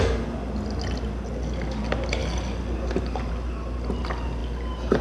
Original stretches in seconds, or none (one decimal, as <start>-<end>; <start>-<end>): 0.0-2.2; 3.3-4.4